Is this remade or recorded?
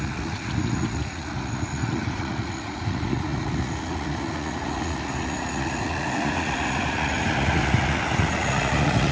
remade